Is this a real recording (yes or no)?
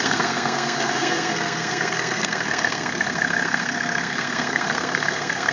no